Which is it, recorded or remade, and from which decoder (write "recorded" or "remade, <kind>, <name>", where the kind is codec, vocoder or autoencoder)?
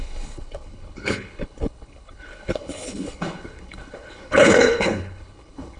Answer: remade, codec, HILCodec